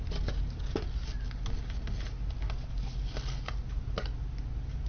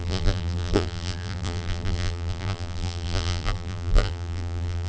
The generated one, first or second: second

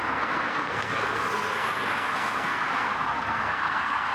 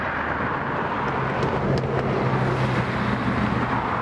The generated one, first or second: first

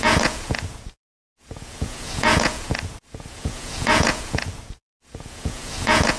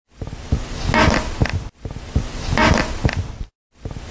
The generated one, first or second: first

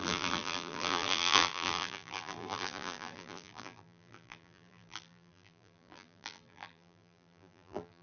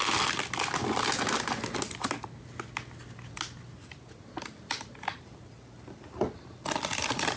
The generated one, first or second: first